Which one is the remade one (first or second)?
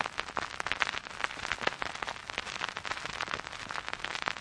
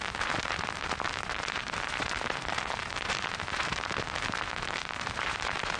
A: second